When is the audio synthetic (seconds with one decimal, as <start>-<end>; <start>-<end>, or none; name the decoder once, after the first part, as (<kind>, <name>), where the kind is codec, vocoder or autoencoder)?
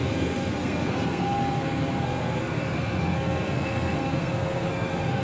0.0-5.2 (codec, SNAC)